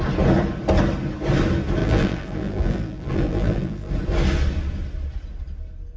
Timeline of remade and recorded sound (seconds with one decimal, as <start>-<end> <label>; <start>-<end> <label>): 0.0-1.8 recorded; 1.8-3.9 remade; 3.9-6.0 recorded